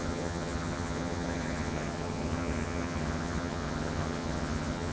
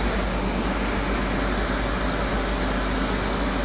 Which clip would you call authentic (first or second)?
second